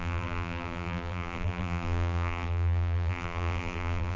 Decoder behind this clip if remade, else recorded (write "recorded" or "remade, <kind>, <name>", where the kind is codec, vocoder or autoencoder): remade, vocoder, BigVGAN v2